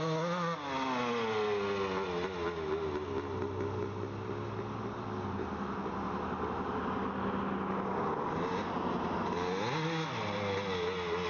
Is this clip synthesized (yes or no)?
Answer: no